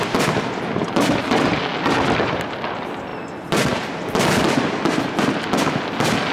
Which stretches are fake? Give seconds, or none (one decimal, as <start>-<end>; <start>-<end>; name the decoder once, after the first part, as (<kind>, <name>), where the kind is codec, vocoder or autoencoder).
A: none